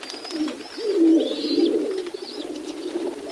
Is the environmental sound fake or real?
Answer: real